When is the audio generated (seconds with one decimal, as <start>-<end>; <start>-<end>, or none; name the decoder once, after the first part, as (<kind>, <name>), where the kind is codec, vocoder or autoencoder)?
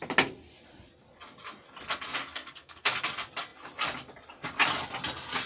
2.2-2.9 (codec, SNAC)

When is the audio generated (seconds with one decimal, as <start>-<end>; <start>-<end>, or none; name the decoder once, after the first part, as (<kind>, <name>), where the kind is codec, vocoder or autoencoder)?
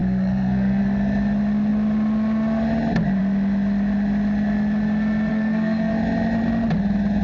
0.0-0.8 (codec, SNAC); 5.3-5.9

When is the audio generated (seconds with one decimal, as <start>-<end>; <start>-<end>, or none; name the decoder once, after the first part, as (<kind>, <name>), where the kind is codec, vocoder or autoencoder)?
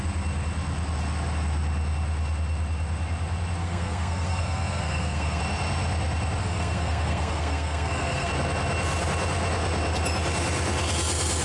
3.6-5.4 (codec, SNAC); 6.4-8.3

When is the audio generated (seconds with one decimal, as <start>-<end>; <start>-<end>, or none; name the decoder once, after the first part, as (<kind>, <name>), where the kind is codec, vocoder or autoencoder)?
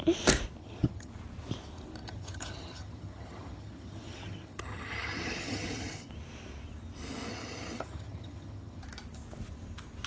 0.6-1.1 (vocoder, HiFi-GAN); 2.0-6.1; 7.3-8.8